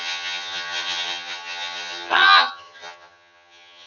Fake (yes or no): yes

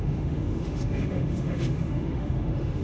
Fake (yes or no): yes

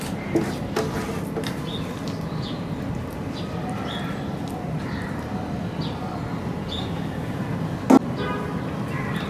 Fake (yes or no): no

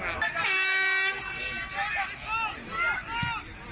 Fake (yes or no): no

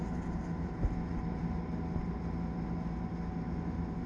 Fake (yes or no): no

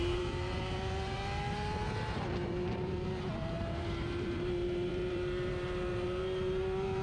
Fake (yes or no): yes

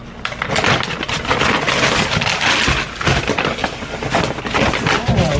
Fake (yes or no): no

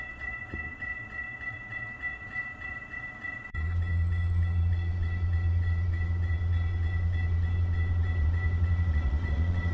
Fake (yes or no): yes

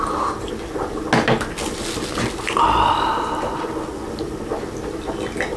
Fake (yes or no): no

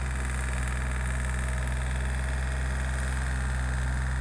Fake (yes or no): no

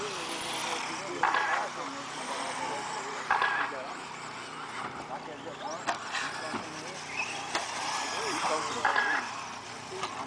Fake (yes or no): no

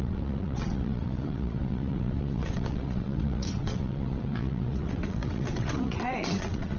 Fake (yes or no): yes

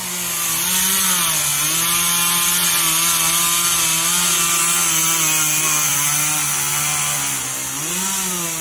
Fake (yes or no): no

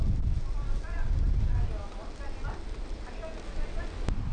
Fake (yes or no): no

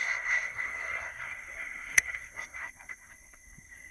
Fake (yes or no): yes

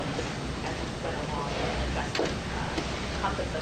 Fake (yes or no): no